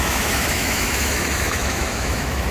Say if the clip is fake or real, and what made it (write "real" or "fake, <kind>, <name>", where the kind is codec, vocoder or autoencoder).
fake, autoencoder, DAC-VAE